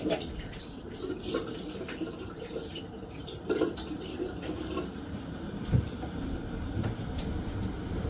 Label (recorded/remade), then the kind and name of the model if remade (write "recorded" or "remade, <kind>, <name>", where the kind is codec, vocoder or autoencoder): remade, vocoder, BigVGAN v2